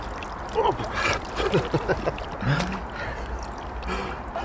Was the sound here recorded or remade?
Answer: recorded